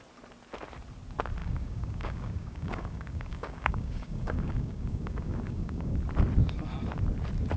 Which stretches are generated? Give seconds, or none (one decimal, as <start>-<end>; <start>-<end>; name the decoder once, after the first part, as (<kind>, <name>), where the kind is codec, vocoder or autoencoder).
1.4-6.0 (codec, DAC)